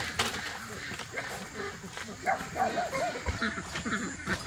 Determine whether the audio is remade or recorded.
recorded